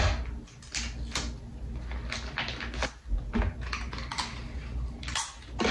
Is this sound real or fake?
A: real